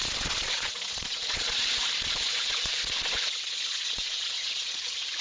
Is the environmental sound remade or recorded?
remade